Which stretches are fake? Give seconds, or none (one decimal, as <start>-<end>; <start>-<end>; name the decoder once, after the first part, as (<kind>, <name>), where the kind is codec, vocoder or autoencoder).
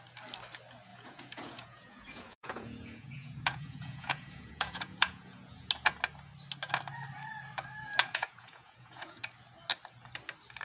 0.9-5.7 (vocoder, Vocos); 8.0-9.2